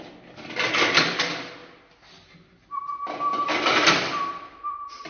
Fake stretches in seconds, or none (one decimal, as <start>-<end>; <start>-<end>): none